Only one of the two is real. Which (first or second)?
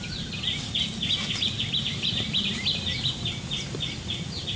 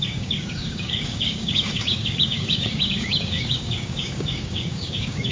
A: first